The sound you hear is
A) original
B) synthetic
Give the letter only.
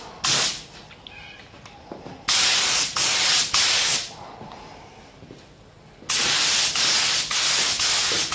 A